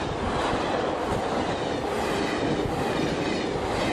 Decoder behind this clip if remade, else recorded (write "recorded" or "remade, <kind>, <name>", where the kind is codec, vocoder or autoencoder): recorded